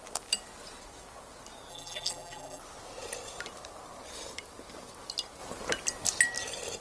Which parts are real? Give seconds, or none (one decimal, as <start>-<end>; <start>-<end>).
0.0-1.7; 2.6-6.8